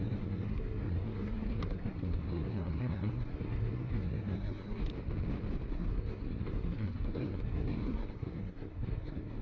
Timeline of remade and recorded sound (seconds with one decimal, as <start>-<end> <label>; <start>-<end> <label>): 0.0-4.9 remade; 4.9-5.7 recorded; 5.7-9.4 remade